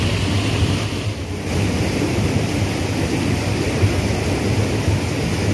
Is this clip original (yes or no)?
yes